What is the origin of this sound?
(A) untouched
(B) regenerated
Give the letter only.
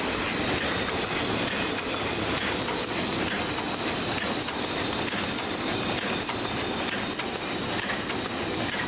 A